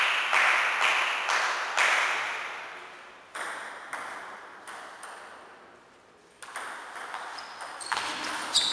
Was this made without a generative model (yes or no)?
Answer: yes